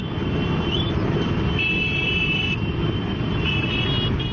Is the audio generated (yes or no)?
no